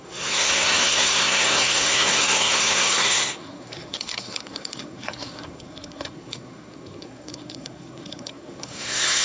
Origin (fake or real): fake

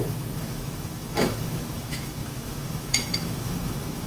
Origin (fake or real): fake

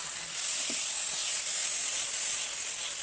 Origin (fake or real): real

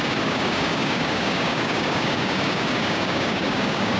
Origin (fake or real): fake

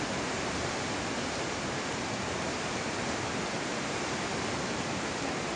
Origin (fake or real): real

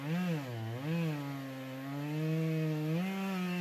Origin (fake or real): real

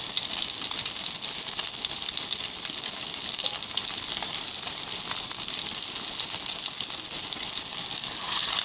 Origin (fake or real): real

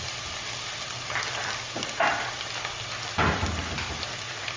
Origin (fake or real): real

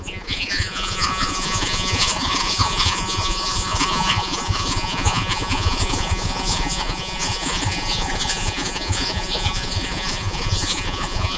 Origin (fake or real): fake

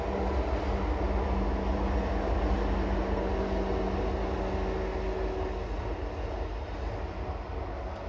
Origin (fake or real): real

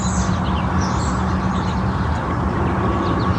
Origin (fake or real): real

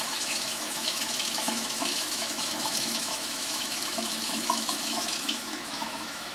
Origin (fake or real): fake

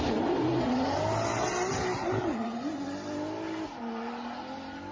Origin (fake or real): real